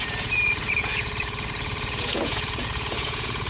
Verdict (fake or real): fake